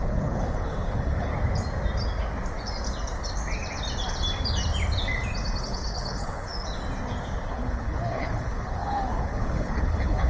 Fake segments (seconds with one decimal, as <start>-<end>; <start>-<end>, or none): 0.0-1.3; 5.6-6.5; 7.5-10.3